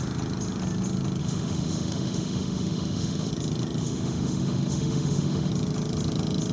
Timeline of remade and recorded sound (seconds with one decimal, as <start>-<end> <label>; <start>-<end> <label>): 0.0-1.2 recorded; 1.2-3.3 remade; 3.3-3.8 recorded; 3.8-5.5 remade; 5.5-6.5 recorded